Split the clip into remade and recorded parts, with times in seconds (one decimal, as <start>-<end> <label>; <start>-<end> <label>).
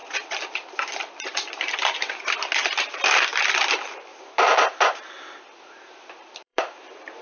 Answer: 0.0-4.1 recorded; 4.1-5.2 remade; 5.2-6.2 recorded; 6.2-7.2 remade